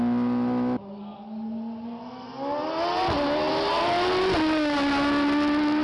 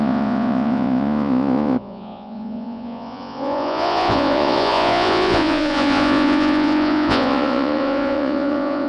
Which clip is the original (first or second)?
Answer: first